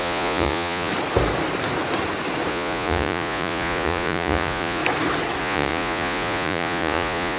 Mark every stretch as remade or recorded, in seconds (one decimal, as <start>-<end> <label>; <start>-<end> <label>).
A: 0.0-0.9 remade; 0.9-2.5 recorded; 2.5-4.8 remade; 4.8-5.4 recorded; 5.4-7.4 remade